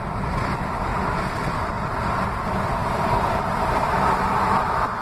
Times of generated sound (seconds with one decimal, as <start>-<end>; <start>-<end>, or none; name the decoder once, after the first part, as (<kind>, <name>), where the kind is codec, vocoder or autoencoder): none